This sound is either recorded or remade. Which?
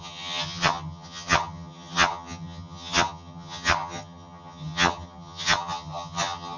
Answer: remade